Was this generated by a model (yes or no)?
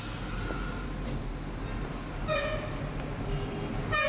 no